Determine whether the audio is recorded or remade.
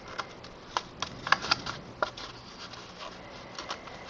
recorded